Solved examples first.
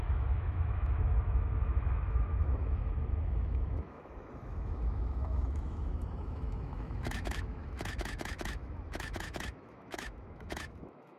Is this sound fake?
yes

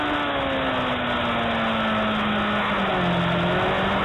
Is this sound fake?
no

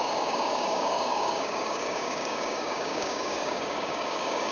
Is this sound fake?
yes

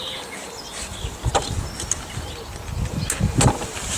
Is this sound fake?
no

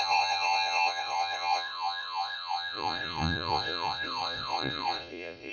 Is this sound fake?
yes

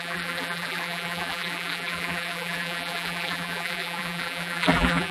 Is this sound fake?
yes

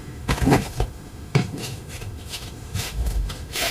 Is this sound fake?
yes